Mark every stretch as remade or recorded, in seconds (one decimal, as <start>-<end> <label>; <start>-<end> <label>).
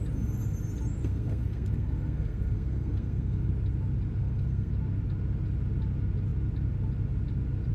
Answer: 0.0-1.0 recorded; 1.0-3.5 remade; 3.5-4.2 recorded; 4.2-4.7 remade; 4.7-7.7 recorded